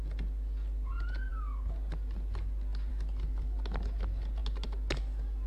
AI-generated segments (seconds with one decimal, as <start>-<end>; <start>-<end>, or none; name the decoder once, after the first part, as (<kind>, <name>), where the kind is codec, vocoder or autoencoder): none